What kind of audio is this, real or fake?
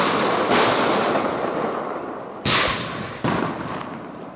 real